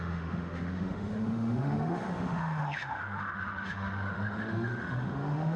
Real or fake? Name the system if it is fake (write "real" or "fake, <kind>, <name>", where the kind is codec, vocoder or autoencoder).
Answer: fake, autoencoder, DAC-VAE